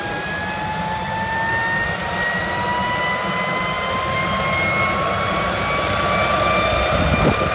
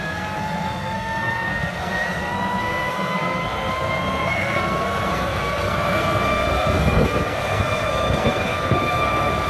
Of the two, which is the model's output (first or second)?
second